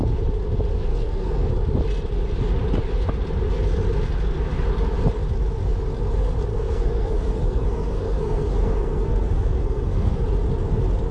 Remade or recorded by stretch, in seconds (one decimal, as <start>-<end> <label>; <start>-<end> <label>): 0.0-0.9 recorded; 0.9-1.5 remade; 1.5-6.5 recorded; 6.5-10.2 remade; 10.2-11.1 recorded